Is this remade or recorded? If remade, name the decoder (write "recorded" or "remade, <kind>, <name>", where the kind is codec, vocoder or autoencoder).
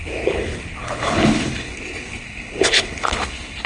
remade, codec, HILCodec